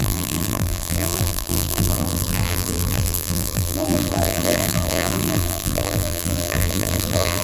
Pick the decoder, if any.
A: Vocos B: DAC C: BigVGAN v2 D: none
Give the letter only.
C